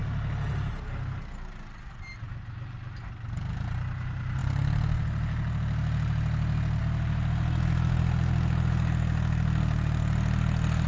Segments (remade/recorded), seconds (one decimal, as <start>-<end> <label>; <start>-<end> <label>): 0.0-10.9 recorded